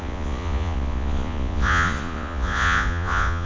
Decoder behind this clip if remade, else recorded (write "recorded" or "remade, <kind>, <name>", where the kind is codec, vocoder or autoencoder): remade, vocoder, Vocos